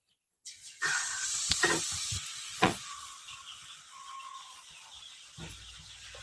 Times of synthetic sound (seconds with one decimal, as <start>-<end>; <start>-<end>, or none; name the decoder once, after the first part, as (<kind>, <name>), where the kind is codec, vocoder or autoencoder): 0.0-1.8 (vocoder, Vocos); 2.3-2.9; 4.3-4.9